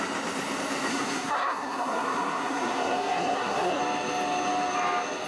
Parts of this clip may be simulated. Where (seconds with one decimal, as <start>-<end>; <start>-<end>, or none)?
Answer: 0.9-3.8